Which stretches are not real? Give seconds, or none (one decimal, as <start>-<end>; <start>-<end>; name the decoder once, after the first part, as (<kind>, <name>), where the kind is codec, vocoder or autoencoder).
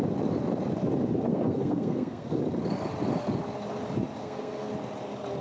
1.3-2.4 (codec, SNAC); 4.2-4.7